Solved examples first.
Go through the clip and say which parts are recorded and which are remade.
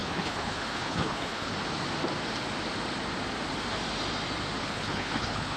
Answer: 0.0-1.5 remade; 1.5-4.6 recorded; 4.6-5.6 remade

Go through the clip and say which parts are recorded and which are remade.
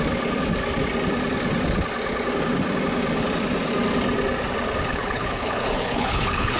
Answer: 0.0-4.9 recorded; 4.9-6.6 remade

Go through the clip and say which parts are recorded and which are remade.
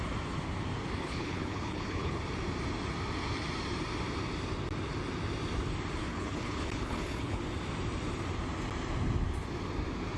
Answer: 0.0-1.0 recorded; 1.0-2.2 remade; 2.2-6.0 recorded; 6.0-7.4 remade; 7.4-10.2 recorded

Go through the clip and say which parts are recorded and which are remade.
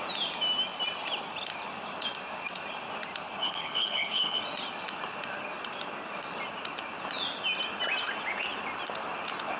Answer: 0.0-3.4 recorded; 3.4-4.4 remade; 4.4-9.6 recorded